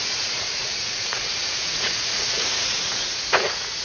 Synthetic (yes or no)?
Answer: yes